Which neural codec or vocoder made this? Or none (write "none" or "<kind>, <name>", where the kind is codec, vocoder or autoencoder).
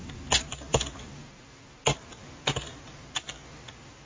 none